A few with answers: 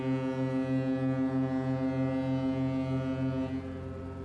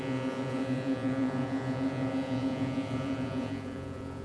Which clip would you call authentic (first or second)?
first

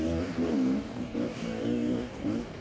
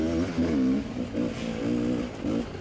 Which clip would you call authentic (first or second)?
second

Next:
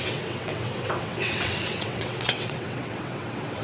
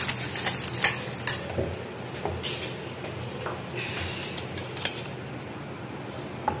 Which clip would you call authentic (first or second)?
second